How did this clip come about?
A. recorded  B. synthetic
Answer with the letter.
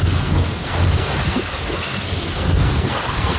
B